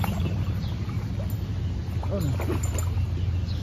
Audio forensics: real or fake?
real